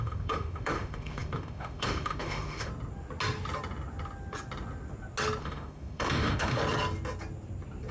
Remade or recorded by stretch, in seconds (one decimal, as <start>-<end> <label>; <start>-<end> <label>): 0.0-2.7 remade; 2.7-5.4 recorded; 5.4-6.6 remade; 6.6-7.9 recorded